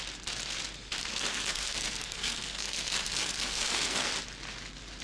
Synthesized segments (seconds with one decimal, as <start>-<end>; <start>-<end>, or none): 1.1-4.1